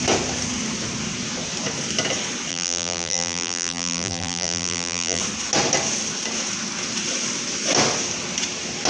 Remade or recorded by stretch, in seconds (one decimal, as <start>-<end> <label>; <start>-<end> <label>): 0.0-2.5 recorded; 2.5-5.2 remade; 5.2-8.9 recorded